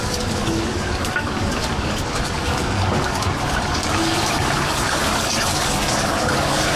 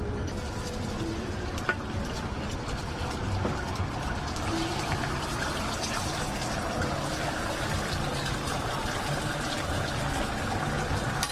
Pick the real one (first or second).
second